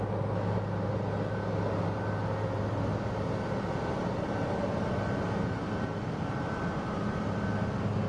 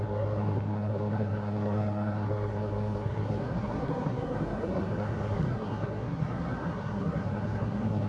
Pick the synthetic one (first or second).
second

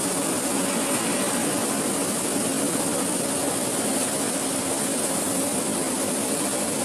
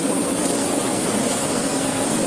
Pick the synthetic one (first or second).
second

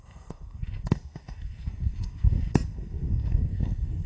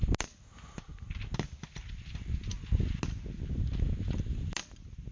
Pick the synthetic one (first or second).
first